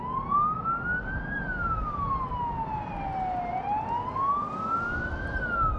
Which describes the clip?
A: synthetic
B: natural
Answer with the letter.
B